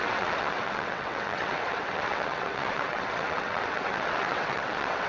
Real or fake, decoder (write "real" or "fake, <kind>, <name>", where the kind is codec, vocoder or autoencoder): fake, vocoder, WaveNeXt